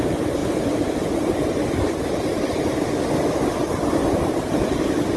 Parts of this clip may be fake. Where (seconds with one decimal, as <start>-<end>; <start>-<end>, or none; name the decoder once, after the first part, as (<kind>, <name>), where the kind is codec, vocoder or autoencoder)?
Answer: none